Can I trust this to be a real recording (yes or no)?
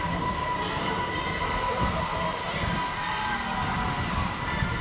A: yes